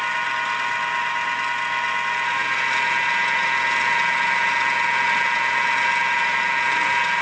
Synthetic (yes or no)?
no